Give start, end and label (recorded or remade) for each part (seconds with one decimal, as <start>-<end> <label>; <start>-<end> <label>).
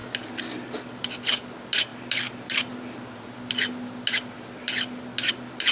0.0-5.7 recorded